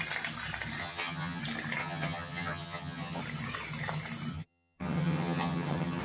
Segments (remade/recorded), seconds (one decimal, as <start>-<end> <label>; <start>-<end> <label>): 0.0-0.8 recorded; 0.8-1.4 remade; 1.4-1.8 recorded; 1.8-3.2 remade; 3.2-4.3 recorded; 4.3-6.0 remade